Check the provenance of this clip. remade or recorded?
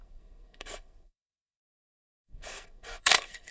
remade